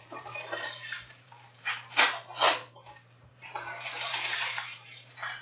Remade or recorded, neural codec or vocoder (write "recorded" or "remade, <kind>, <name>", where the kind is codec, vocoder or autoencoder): remade, vocoder, BigVGAN v2